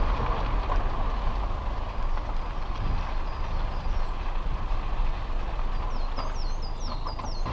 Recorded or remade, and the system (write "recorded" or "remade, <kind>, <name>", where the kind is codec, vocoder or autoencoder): recorded